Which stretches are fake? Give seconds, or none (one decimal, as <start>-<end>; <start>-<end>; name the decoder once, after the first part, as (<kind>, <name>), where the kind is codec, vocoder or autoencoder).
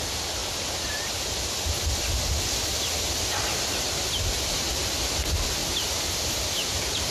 5.6-7.1 (vocoder, BigVGAN v2)